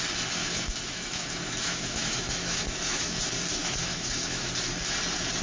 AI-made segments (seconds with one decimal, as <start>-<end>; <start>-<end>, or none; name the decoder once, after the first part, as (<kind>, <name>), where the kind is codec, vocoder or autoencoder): 0.4-3.2 (autoencoder, DAC-VAE); 3.6-4.5